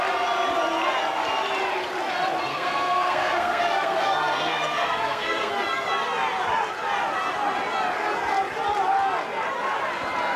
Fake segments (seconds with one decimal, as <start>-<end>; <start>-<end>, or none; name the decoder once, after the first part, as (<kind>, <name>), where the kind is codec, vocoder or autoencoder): 2.5-5.5 (codec, SNAC)